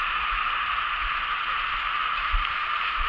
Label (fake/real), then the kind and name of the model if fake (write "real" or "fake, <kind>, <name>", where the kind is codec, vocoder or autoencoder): fake, vocoder, BigVGAN v2